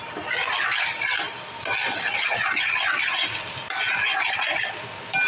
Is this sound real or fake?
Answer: real